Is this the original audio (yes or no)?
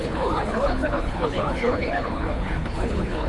no